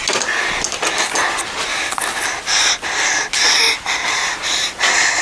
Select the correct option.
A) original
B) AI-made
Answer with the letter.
A